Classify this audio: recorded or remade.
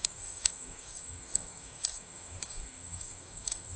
remade